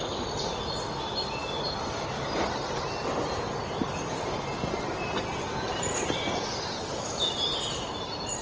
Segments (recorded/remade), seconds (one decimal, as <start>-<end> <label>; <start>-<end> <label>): 0.0-8.4 recorded